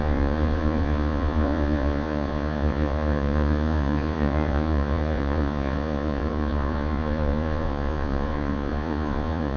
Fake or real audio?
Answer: fake